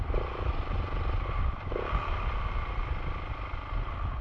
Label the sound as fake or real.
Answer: real